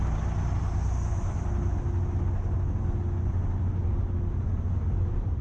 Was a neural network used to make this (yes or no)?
no